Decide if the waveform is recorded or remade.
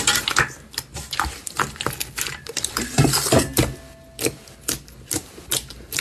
recorded